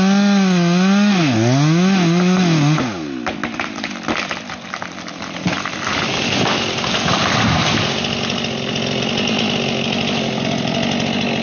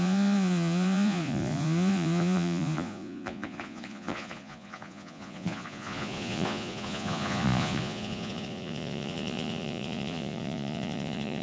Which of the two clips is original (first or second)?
first